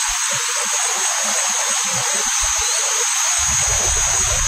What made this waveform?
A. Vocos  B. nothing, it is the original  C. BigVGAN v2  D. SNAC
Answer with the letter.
B